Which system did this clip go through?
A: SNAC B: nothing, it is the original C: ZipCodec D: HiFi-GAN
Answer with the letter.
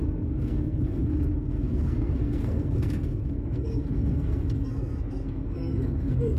A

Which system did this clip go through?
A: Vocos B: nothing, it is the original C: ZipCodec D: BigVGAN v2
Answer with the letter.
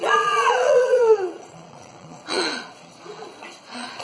A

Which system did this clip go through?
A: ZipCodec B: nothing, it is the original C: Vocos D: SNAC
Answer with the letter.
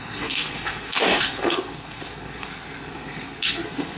D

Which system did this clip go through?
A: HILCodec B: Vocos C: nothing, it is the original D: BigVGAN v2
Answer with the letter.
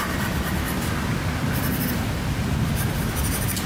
C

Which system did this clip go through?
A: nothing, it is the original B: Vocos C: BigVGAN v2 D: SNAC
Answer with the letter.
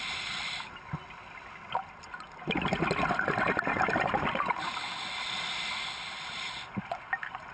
A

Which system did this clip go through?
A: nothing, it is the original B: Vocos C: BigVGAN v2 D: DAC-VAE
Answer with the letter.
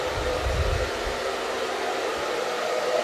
A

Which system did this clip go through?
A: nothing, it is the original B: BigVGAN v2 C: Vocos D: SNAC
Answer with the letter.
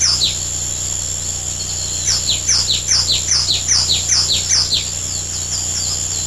A